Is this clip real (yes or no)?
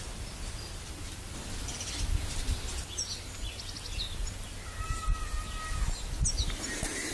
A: yes